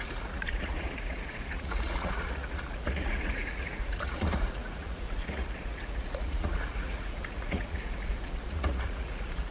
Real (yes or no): no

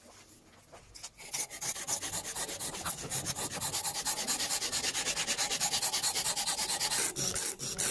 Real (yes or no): yes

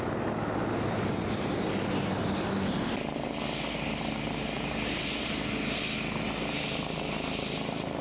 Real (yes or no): yes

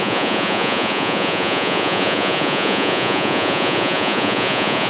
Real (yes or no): no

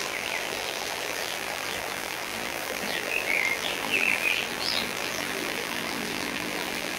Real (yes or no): no